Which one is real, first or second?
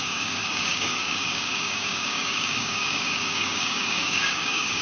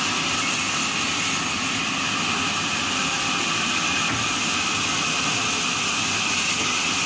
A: second